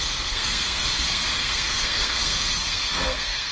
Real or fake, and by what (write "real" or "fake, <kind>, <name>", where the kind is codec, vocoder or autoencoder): fake, codec, SNAC